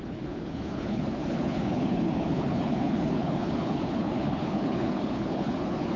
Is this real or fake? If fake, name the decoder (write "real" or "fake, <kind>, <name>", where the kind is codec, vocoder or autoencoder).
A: fake, codec, HILCodec